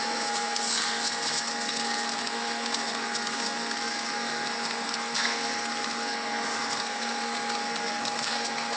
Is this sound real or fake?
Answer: fake